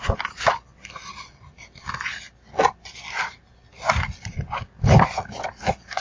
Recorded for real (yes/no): yes